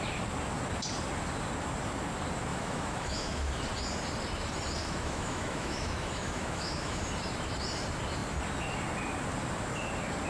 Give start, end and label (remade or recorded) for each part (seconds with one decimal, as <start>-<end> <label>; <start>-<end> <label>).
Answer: 0.0-2.5 recorded; 2.5-3.5 remade; 3.5-4.8 recorded; 4.8-7.0 remade; 7.0-10.3 recorded